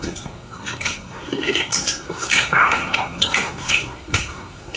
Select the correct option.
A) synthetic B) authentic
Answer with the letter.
A